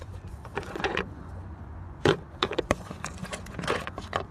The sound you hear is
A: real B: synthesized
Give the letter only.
B